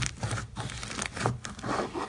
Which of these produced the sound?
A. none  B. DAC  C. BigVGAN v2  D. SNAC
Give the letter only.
A